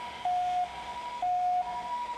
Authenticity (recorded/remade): remade